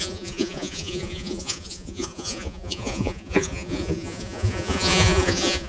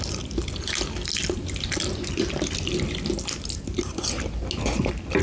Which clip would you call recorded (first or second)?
second